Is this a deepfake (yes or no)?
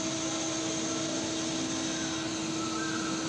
no